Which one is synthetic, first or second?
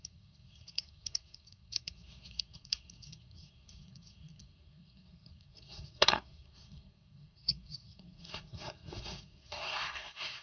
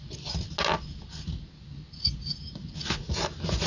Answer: first